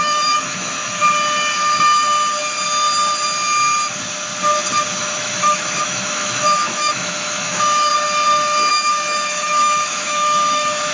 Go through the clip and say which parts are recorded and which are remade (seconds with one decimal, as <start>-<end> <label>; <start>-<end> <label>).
0.0-1.0 remade; 1.0-5.0 recorded; 5.0-7.9 remade; 7.9-8.7 recorded; 8.7-10.9 remade